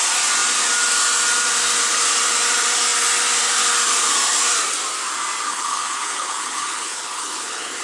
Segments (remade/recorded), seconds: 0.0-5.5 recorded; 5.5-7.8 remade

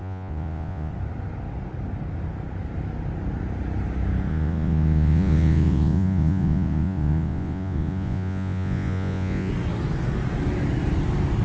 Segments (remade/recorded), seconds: 0.0-0.9 remade; 0.9-4.3 recorded; 4.3-9.5 remade; 9.5-11.4 recorded

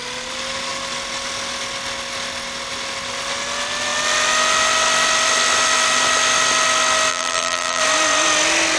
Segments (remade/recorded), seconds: 0.0-7.1 recorded; 7.1-7.8 remade; 7.8-8.8 recorded